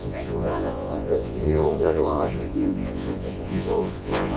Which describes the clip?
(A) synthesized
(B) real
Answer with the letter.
A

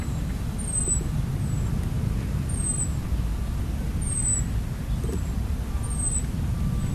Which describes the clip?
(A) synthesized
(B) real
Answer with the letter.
B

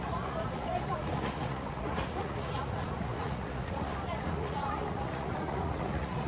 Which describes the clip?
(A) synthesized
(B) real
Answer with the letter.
A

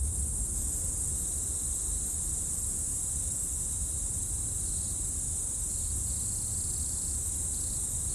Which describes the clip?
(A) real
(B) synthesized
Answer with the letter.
A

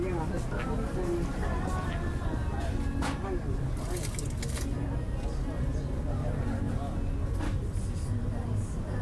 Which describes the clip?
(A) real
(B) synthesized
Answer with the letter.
A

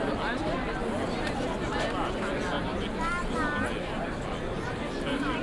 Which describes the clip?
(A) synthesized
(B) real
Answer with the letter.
B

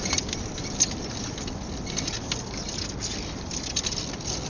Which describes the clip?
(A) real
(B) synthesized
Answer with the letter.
A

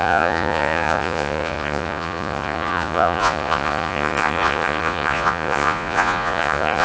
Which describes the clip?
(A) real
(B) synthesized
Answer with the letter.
B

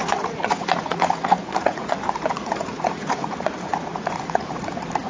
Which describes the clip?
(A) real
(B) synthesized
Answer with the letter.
B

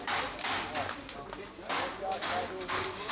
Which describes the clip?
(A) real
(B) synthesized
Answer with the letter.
A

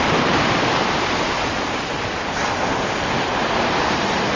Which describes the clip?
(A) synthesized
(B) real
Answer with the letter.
B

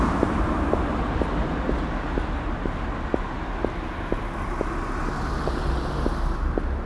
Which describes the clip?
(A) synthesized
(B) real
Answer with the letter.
B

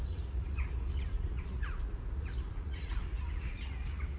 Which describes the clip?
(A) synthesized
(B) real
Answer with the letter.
A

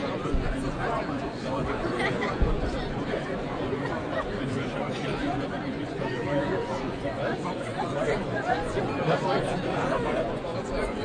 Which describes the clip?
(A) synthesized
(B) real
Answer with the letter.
A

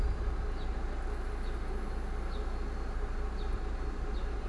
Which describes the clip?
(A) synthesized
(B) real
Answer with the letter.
B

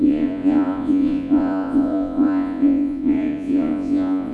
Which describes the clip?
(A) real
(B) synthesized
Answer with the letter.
B